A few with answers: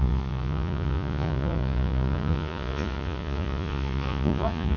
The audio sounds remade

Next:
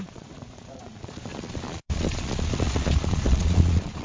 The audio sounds remade